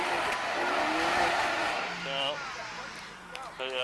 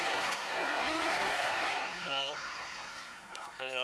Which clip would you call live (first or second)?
first